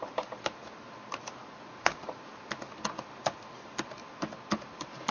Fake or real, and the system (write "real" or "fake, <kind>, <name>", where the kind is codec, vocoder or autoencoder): real